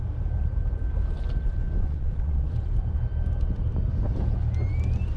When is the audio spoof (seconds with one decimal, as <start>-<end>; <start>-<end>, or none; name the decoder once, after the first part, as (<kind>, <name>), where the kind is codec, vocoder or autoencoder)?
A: 1.8-2.5 (vocoder, Vocos)